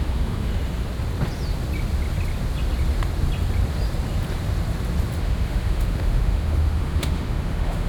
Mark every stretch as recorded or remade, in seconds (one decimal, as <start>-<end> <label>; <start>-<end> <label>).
0.0-0.5 remade; 0.5-5.2 recorded; 5.2-7.9 remade

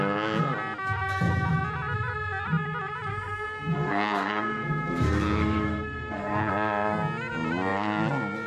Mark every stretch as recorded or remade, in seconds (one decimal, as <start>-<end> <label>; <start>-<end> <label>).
0.0-3.1 recorded; 3.1-6.5 remade; 6.5-8.5 recorded

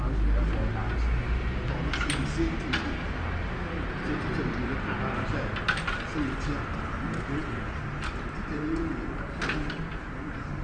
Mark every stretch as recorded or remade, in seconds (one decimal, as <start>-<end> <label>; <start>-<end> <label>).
0.0-10.6 recorded

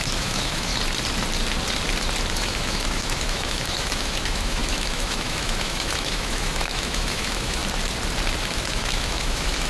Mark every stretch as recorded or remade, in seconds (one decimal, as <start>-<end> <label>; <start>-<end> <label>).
0.0-0.7 remade; 0.7-2.3 recorded; 2.3-7.6 remade; 7.6-8.4 recorded; 8.4-9.7 remade

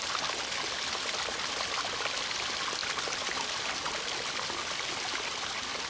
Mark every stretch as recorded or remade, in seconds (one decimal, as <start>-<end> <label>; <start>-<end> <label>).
0.0-5.9 recorded